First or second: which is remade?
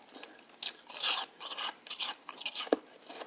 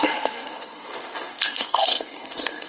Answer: second